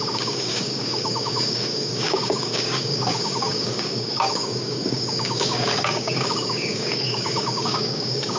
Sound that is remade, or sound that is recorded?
remade